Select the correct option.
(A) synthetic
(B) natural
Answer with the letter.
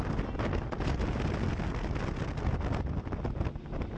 B